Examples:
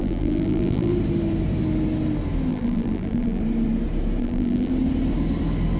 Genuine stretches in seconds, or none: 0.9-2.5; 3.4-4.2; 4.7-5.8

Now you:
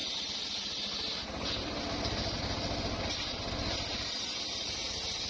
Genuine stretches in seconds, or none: 0.0-5.3

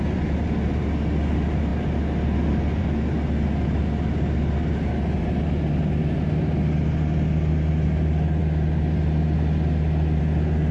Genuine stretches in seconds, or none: 0.0-10.7

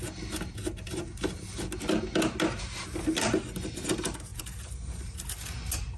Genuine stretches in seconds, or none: 0.0-4.3; 5.2-6.0

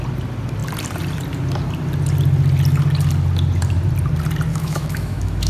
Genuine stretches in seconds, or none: 0.0-4.5

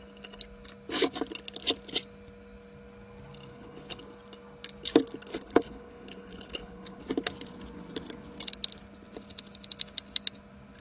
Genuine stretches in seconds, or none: 0.0-3.5; 4.0-5.3; 7.0-10.8

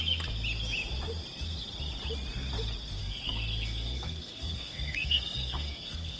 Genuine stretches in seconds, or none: 0.0-3.0